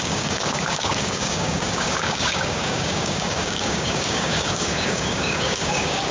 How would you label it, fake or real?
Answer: fake